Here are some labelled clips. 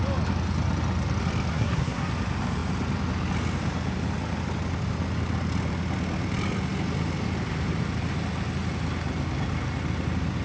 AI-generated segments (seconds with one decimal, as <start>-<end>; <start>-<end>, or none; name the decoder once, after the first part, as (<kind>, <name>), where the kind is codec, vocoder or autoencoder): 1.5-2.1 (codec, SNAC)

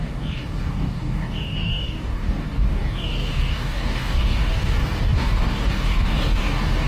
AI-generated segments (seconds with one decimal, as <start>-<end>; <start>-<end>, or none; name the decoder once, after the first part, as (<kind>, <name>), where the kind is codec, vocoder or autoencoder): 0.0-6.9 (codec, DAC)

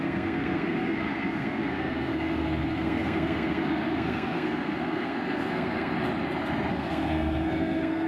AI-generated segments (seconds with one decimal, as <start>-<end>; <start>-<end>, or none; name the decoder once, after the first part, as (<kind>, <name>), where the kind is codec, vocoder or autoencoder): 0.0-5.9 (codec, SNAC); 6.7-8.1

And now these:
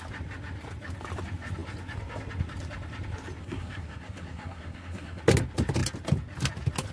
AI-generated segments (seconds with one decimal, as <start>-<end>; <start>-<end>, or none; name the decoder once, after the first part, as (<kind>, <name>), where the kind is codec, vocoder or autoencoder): 3.4-5.2 (codec, SNAC)

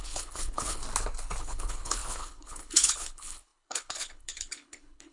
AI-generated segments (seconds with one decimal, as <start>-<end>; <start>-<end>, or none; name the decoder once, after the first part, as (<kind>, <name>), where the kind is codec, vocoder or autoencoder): 0.0-0.8 (codec, HILCodec); 1.4-5.1

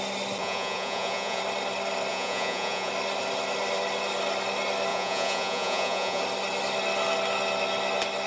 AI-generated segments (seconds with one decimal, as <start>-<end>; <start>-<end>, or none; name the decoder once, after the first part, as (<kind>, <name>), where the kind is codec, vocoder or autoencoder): 0.4-1.4 (vocoder, Vocos); 2.1-2.9; 4.9-6.2